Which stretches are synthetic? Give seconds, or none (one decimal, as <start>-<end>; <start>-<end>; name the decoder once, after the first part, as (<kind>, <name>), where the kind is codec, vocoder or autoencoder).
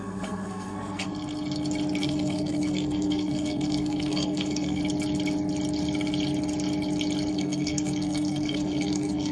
0.0-1.1 (codec, SNAC); 2.0-4.8; 7.3-9.3